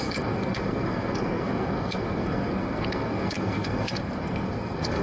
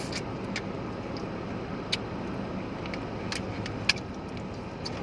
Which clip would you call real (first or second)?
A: second